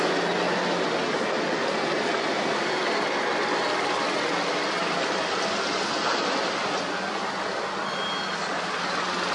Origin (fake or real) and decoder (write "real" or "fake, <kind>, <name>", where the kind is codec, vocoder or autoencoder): real